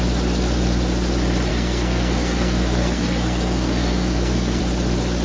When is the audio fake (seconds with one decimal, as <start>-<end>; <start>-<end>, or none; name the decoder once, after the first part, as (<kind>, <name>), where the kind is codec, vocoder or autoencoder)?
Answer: 1.5-4.6 (codec, SNAC)